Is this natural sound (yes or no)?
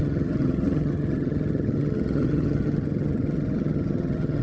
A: no